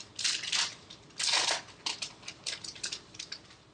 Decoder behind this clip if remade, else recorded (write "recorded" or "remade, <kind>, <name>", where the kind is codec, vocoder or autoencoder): recorded